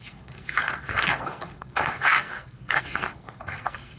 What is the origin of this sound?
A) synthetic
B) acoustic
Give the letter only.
A